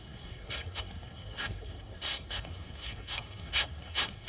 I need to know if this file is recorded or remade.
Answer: remade